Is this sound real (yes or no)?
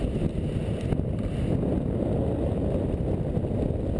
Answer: yes